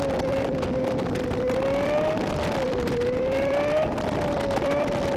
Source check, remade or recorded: remade